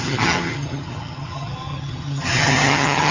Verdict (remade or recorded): remade